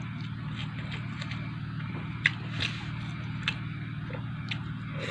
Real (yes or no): yes